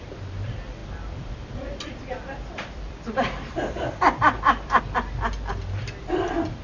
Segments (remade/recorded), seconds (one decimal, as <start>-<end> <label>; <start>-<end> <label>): 0.0-0.8 recorded; 0.8-4.8 remade; 4.8-6.6 recorded